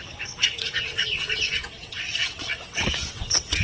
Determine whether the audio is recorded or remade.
remade